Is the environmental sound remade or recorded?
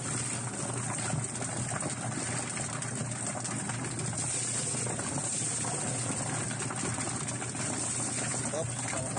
recorded